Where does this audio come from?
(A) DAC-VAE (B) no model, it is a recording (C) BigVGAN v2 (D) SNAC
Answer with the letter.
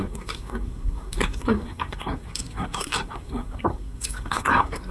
D